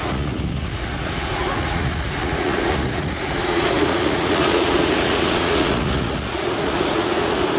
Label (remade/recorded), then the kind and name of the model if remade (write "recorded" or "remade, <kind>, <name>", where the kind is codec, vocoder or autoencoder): remade, vocoder, Vocos